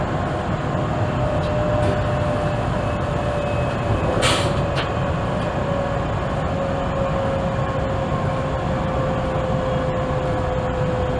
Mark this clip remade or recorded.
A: recorded